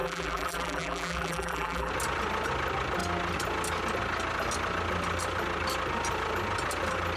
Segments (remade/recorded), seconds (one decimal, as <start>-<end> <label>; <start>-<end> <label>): 0.0-1.9 remade; 1.9-7.2 recorded